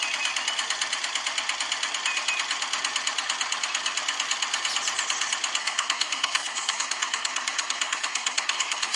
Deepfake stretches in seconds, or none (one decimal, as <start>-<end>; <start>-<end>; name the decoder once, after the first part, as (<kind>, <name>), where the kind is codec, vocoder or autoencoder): 5.6-9.0 (codec, SNAC)